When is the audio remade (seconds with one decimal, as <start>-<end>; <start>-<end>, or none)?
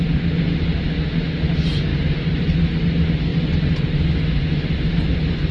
0.7-1.5; 1.9-2.7; 3.3-4.9